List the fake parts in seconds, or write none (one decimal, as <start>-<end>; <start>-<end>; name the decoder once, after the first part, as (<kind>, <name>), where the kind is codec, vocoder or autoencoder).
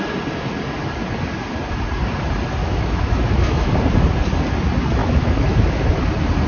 2.6-3.7 (autoencoder, DAC-VAE); 5.0-5.9